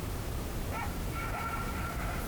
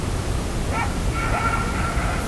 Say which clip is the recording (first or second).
second